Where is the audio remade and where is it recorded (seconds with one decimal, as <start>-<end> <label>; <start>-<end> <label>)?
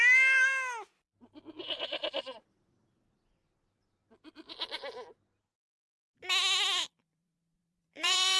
0.0-3.4 recorded; 3.4-5.4 remade; 5.4-7.1 recorded; 7.1-8.4 remade